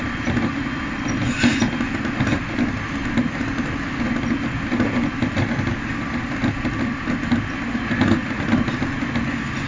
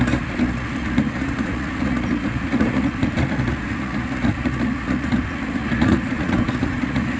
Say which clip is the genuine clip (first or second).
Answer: first